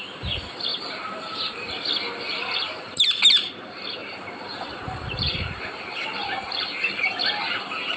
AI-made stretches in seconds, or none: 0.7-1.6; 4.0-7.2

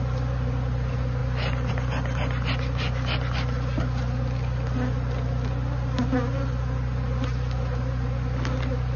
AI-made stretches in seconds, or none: none

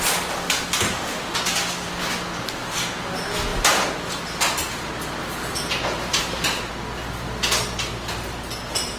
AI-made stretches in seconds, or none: 0.9-1.4

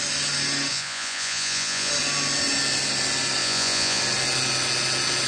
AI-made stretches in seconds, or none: 0.7-1.9; 3.4-4.0

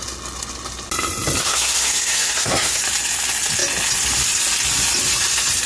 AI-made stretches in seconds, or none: 1.4-2.8

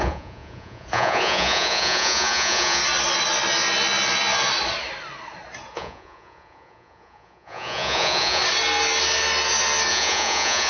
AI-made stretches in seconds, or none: 0.0-2.8; 5.7-8.4; 9.9-10.7

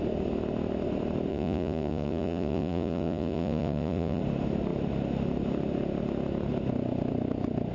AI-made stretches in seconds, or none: 1.3-4.2

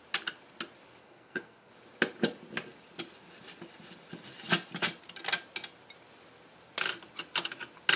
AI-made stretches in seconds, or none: 1.0-1.7